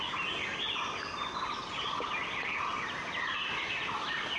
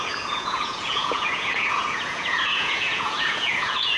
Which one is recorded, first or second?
first